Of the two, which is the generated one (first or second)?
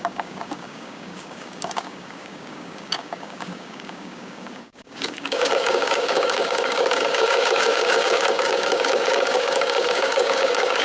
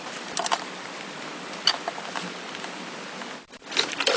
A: first